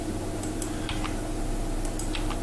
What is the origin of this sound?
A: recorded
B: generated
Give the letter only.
A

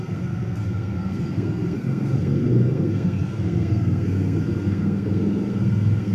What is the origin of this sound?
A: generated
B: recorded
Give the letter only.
A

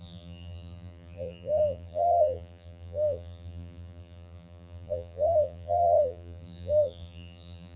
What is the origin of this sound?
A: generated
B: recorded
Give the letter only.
A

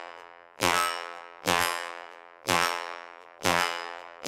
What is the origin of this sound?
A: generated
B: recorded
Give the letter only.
A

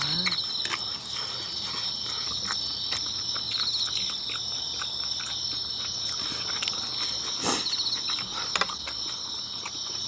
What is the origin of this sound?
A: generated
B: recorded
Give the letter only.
B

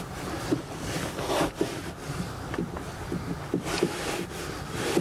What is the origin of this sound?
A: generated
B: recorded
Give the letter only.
B